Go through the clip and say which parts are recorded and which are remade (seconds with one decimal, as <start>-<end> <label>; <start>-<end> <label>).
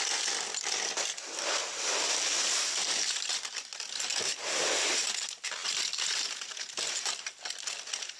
0.0-8.2 recorded